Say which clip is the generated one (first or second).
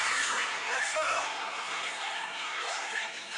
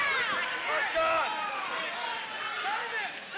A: first